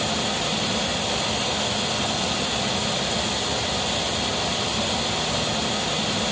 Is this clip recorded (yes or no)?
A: yes